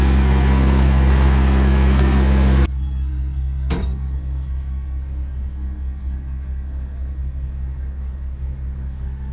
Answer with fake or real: fake